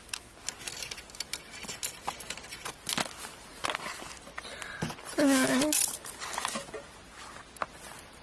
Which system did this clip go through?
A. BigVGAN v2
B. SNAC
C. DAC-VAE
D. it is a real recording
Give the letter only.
D